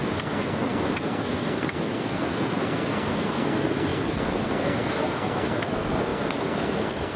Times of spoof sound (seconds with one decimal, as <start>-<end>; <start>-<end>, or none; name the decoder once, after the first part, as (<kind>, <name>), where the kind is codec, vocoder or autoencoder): 0.0-7.2 (codec, SNAC)